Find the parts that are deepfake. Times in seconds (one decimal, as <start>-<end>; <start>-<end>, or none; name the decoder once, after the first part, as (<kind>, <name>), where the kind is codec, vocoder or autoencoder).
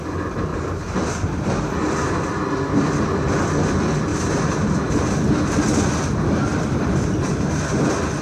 0.5-1.1 (vocoder, BigVGAN v2); 4.1-4.9; 6.5-7.6